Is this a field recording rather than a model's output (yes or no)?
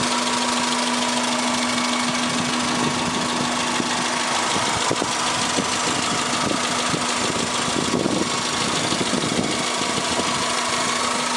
yes